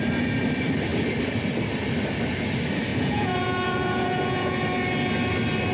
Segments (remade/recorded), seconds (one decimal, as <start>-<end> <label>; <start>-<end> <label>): 0.0-2.9 recorded; 2.9-4.6 remade; 4.6-5.7 recorded